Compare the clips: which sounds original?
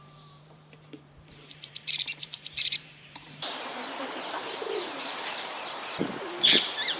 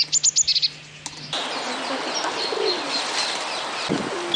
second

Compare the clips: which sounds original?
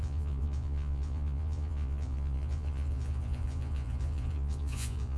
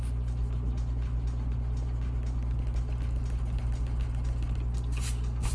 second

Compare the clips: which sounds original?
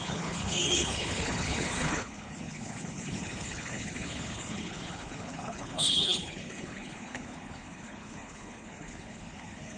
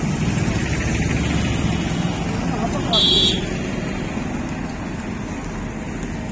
second